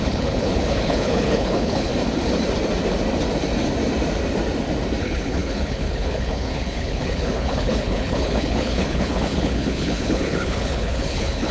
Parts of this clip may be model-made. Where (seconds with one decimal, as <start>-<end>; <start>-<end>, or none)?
0.0-1.9; 5.0-11.5